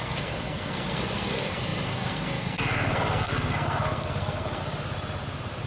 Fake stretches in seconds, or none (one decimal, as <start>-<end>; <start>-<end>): 0.0-4.6